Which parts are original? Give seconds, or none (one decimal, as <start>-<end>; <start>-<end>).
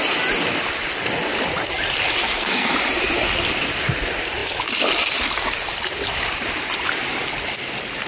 0.0-2.2; 2.7-8.1